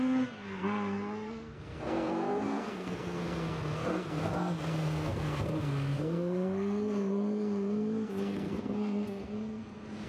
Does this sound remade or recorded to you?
remade